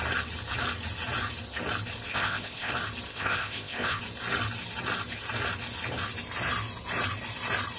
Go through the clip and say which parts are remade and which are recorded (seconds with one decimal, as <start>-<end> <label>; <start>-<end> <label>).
0.0-2.1 recorded; 2.1-2.7 remade; 2.7-3.1 recorded; 3.1-4.0 remade; 4.0-7.8 recorded